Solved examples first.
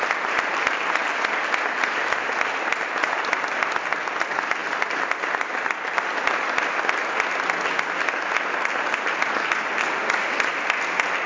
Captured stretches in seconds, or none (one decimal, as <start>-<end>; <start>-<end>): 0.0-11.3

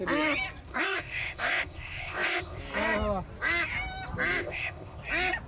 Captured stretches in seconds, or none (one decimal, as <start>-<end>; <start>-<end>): 0.0-0.7; 2.6-4.4; 5.0-5.5

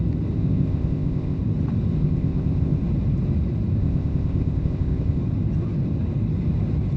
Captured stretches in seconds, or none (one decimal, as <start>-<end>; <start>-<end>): 0.0-0.4; 1.4-2.0; 2.8-3.8; 5.2-7.0